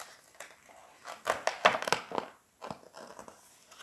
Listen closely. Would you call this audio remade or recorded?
recorded